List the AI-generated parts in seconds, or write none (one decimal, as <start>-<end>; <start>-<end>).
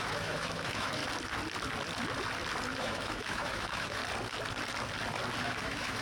0.0-1.0; 2.8-4.0; 5.4-6.0